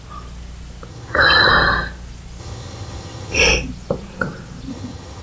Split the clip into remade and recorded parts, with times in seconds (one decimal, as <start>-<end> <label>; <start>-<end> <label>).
0.0-0.9 recorded; 0.9-1.5 remade; 1.5-2.4 recorded; 2.4-3.4 remade; 3.4-4.7 recorded; 4.7-5.2 remade